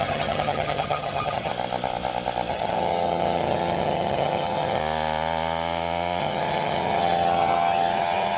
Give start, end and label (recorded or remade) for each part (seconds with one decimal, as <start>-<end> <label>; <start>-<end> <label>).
0.0-1.5 remade; 1.5-2.5 recorded; 2.5-4.8 remade; 4.8-6.2 recorded; 6.2-8.4 remade